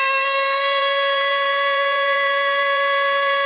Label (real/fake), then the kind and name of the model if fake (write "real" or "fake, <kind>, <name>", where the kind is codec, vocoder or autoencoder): fake, vocoder, BigVGAN v2